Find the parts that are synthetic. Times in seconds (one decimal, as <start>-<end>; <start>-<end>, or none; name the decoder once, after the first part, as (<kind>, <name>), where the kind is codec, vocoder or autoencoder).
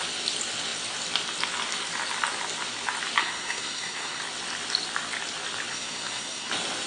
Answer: 3.2-4.2 (codec, SNAC); 5.7-6.5